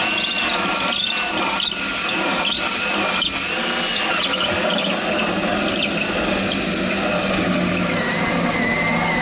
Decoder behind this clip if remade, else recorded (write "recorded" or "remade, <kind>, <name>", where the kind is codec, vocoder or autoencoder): recorded